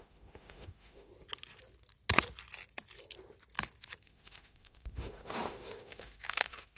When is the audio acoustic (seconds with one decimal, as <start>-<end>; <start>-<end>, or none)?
1.1-4.0